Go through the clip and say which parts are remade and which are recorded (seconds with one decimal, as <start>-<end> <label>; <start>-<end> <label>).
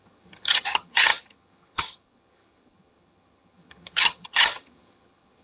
0.0-5.4 remade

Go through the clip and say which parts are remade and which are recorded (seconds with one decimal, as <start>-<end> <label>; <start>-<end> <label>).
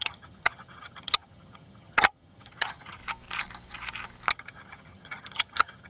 0.0-3.0 remade; 3.0-4.3 recorded; 4.3-5.9 remade